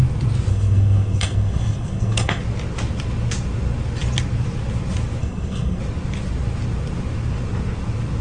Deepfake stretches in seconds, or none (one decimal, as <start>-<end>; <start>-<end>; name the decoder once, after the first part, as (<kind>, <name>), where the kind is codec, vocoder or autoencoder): 0.5-2.4 (codec, SNAC); 5.2-5.8